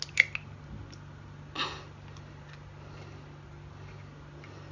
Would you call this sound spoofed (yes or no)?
no